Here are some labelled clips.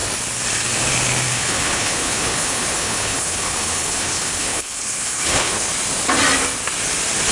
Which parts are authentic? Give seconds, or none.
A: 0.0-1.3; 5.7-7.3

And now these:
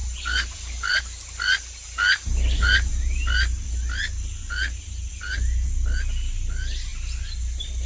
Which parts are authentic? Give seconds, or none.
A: 0.0-7.9

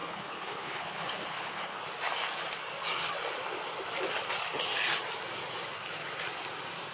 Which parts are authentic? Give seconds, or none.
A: 1.8-6.9